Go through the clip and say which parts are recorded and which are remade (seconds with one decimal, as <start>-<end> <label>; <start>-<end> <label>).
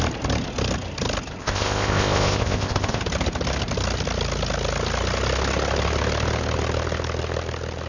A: 0.0-1.4 recorded; 1.4-3.0 remade; 3.0-7.9 recorded